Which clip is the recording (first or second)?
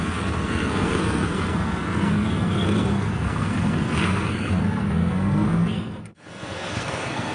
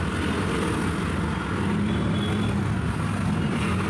second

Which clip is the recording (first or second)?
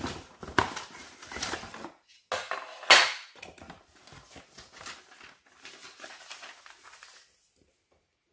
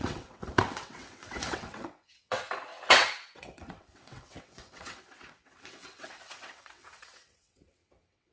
first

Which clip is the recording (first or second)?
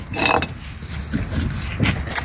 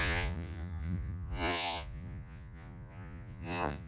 first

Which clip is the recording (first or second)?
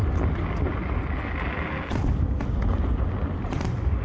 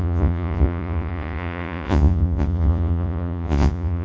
first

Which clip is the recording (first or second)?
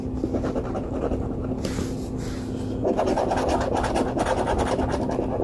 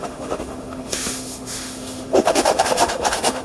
first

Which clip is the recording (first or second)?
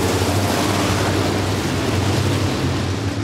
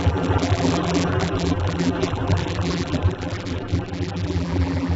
first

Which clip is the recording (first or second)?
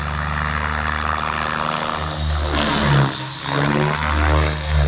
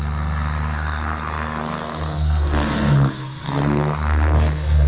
first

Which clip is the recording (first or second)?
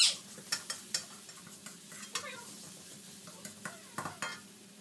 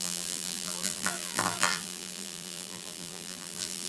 first